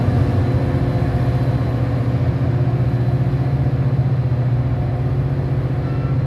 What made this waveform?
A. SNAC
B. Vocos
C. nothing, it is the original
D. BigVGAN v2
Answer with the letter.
C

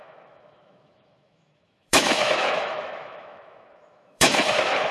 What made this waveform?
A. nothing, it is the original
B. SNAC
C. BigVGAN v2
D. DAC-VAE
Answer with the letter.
D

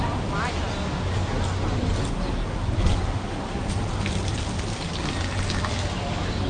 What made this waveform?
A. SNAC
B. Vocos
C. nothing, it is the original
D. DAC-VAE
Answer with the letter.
C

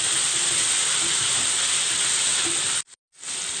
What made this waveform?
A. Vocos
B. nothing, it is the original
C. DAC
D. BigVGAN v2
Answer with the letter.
B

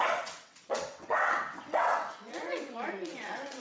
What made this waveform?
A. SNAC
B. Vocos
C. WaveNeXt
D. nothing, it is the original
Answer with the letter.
C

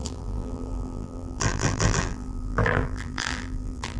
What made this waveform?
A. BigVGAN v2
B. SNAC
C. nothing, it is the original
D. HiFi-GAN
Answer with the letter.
A